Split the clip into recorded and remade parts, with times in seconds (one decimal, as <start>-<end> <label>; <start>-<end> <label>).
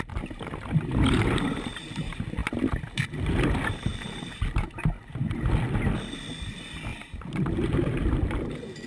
0.0-8.9 recorded